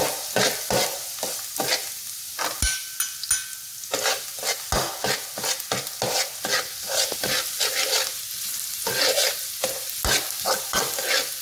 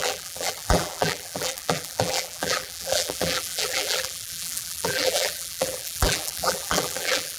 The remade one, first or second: second